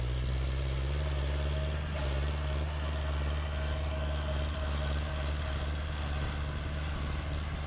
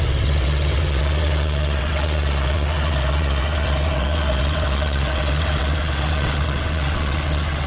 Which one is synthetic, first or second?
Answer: second